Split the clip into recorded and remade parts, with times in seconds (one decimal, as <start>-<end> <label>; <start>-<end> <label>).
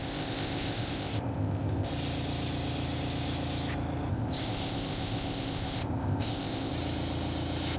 0.0-1.9 remade; 1.9-4.1 recorded; 4.1-6.7 remade; 6.7-7.8 recorded